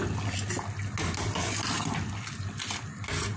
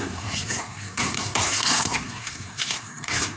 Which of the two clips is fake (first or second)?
second